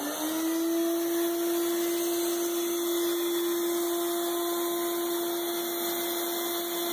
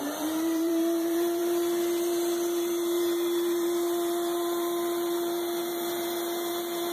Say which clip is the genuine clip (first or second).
first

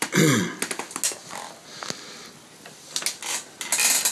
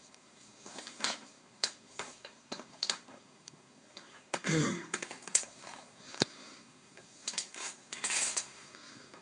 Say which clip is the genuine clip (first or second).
first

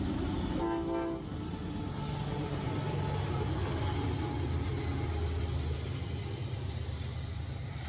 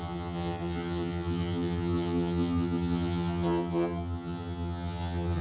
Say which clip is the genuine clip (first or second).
first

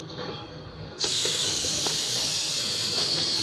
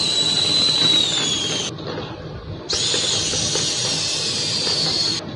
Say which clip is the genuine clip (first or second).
second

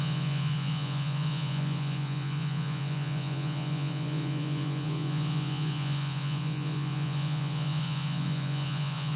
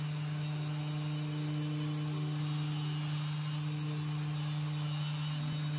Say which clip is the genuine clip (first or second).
second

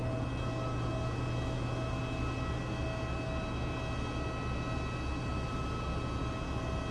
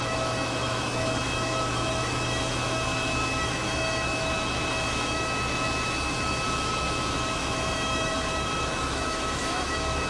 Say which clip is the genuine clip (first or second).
first